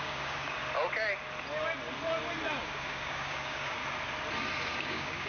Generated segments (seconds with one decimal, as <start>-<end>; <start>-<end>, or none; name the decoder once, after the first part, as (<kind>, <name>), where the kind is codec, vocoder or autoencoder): 0.0-0.6 (codec, DAC); 2.6-3.8; 4.8-5.3